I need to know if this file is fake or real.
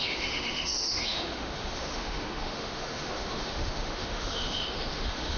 fake